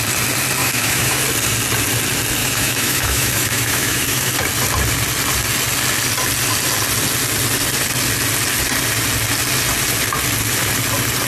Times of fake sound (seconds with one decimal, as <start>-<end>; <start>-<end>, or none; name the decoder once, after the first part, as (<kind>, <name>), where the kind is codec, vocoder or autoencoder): 0.6-1.2 (autoencoder, DAC-VAE); 2.4-4.3